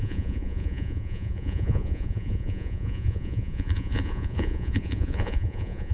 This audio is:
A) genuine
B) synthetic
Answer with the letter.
B